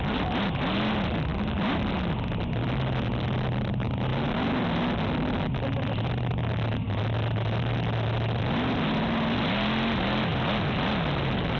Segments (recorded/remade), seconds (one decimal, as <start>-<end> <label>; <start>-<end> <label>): 0.0-11.6 recorded

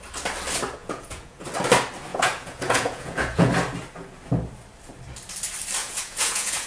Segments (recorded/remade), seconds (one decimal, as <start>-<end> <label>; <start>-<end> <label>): 0.0-0.8 recorded; 0.8-1.4 remade; 1.4-2.1 recorded; 2.1-3.5 remade; 3.5-5.8 recorded; 5.8-6.7 remade

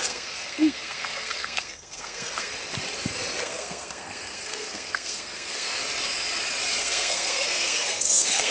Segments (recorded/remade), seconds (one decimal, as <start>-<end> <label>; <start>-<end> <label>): 0.0-2.5 remade; 2.5-3.4 recorded; 3.4-5.8 remade; 5.8-6.8 recorded; 6.8-8.5 remade